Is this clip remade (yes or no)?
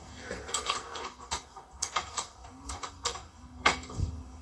yes